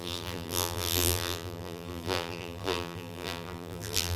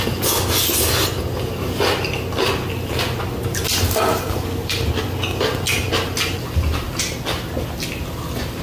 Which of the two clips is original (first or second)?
second